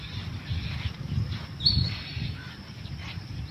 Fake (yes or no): no